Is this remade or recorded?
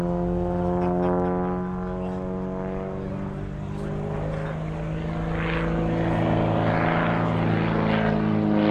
recorded